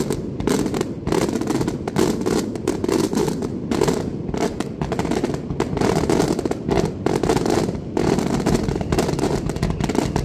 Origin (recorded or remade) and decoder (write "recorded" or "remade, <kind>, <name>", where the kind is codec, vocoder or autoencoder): recorded